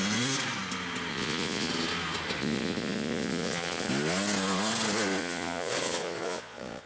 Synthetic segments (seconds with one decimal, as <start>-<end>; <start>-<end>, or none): 1.1-1.7; 2.4-3.9; 5.2-6.9